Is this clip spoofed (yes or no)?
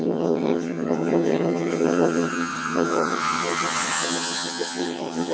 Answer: yes